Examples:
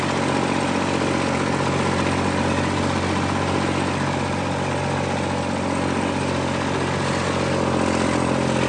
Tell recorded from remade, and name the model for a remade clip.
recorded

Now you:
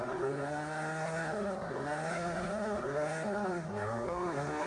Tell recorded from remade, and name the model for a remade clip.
remade, codec, SNAC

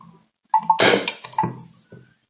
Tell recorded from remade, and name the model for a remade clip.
recorded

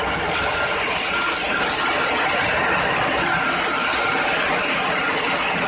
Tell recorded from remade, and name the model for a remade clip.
recorded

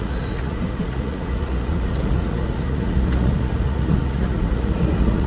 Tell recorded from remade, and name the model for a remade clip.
remade, vocoder, Vocos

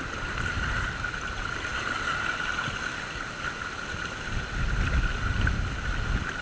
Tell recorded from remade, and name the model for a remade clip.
recorded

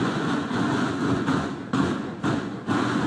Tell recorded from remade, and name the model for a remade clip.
remade, vocoder, Vocos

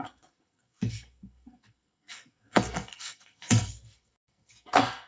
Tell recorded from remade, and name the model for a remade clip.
remade, codec, SNAC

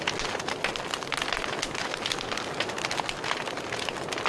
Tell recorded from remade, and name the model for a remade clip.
recorded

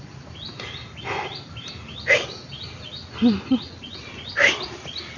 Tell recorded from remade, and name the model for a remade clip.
recorded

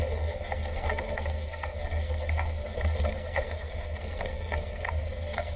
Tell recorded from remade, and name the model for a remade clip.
remade, codec, SNAC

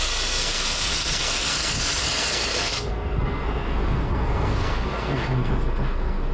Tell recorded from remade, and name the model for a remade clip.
remade, codec, SNAC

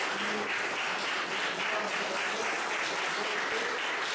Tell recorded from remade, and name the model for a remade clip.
recorded